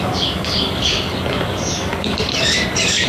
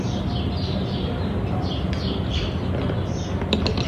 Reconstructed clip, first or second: first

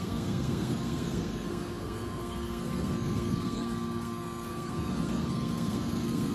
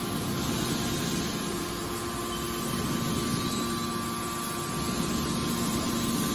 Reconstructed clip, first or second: first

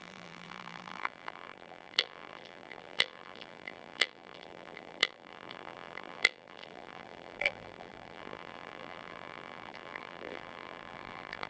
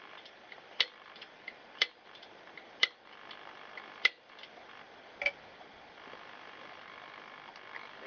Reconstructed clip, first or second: first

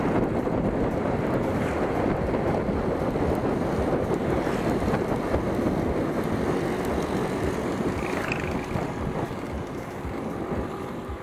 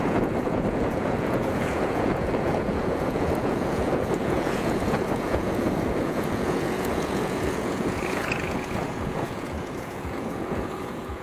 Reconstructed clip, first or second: second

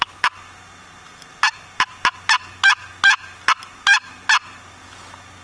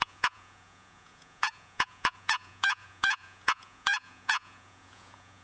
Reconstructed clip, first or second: second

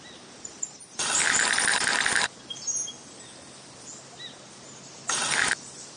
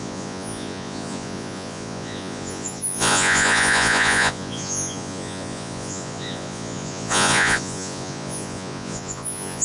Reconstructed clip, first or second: second